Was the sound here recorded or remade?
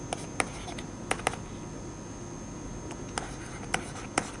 recorded